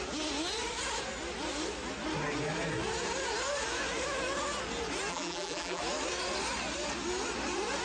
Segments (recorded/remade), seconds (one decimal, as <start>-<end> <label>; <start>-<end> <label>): 0.0-5.1 recorded; 5.1-5.8 remade; 5.8-7.8 recorded